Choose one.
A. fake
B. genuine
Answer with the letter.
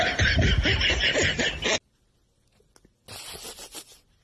B